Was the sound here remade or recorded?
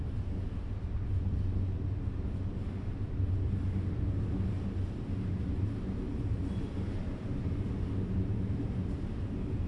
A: recorded